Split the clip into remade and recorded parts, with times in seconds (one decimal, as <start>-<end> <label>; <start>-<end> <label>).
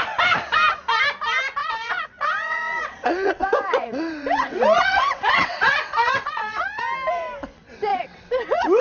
0.0-1.6 recorded; 1.6-6.8 remade; 6.8-7.9 recorded; 7.9-8.8 remade